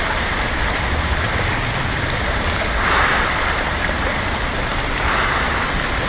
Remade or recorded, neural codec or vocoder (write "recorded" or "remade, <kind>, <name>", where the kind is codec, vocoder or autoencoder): recorded